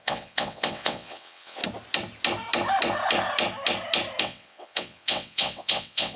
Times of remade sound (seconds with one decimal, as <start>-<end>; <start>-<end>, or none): 0.0-1.6; 4.2-6.2